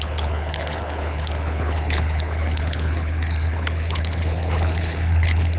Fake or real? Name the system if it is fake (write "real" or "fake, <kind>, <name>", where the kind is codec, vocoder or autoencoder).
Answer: fake, codec, HILCodec